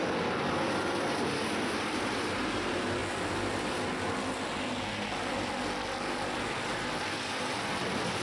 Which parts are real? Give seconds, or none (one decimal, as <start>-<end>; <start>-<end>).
0.0-8.2